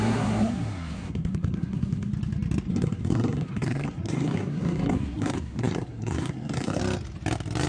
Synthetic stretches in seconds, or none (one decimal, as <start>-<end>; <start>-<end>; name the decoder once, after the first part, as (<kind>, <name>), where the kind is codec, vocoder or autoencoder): 0.0-2.1 (codec, SNAC); 2.7-6.8

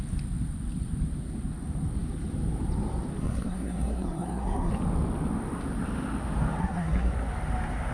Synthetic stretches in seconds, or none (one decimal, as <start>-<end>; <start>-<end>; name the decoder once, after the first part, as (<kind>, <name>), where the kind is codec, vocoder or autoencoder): 3.2-4.7 (codec, SNAC); 6.6-7.1

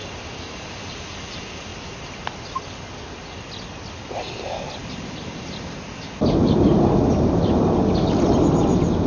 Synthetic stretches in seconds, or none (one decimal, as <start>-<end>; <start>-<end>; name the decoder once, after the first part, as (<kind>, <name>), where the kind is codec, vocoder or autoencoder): none

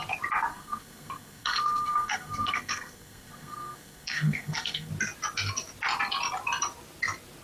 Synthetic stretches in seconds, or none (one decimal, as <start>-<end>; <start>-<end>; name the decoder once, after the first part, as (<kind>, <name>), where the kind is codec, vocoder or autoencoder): 0.5-4.9 (codec, SNAC)

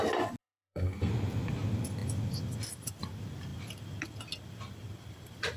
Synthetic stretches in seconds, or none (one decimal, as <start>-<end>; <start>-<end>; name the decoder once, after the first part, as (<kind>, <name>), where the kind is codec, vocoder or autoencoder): 0.4-1.1 (codec, SNAC)